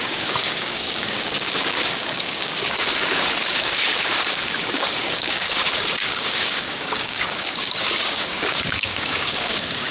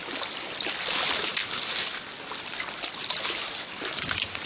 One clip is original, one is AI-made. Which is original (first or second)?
second